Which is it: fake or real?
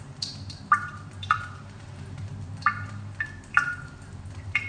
fake